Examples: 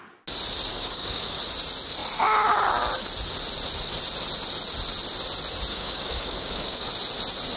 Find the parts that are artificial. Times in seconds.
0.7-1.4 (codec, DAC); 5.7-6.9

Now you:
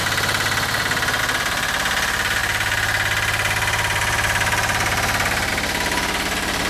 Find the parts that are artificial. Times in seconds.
none

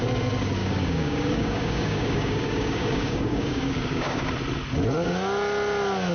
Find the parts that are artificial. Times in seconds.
0.6-4.3 (codec, DAC)

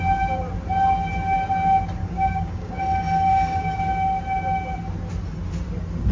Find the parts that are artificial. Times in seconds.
2.0-2.8 (codec, DAC); 3.3-3.8